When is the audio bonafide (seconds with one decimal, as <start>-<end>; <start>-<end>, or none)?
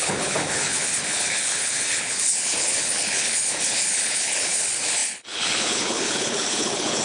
none